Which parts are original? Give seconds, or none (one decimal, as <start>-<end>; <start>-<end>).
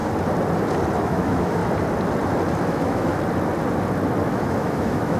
0.0-1.0; 1.6-2.7; 3.1-4.2